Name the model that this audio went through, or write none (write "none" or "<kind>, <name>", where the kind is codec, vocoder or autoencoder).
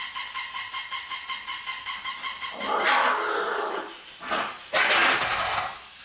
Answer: none